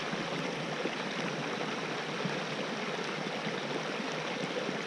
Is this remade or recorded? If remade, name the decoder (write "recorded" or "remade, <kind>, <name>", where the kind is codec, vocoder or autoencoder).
recorded